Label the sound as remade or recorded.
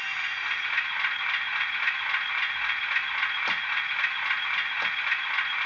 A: recorded